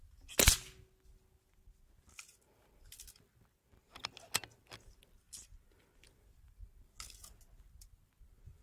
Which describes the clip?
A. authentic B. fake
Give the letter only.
A